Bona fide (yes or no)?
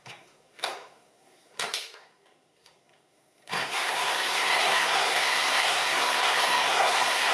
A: no